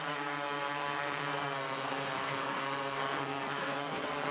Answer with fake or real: fake